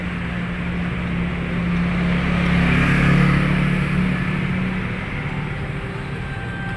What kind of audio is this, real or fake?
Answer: real